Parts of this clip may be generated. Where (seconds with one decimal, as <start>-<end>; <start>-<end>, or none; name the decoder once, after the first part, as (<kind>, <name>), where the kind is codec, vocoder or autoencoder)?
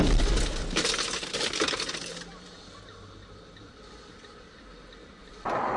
5.2-5.8 (vocoder, BigVGAN v2)